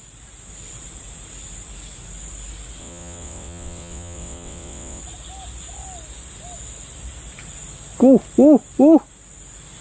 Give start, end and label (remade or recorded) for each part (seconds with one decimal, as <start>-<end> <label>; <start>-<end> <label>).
0.0-2.8 recorded; 2.8-5.0 remade; 5.0-9.8 recorded